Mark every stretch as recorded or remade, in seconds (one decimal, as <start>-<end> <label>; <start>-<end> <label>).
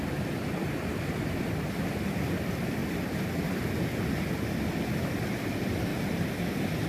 0.0-2.8 remade; 2.8-4.3 recorded; 4.3-5.9 remade; 5.9-6.9 recorded